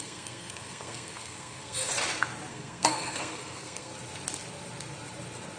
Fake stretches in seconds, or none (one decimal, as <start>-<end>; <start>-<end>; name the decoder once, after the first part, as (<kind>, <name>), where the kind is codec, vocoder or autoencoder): 0.0-1.9 (codec, SNAC); 2.5-3.9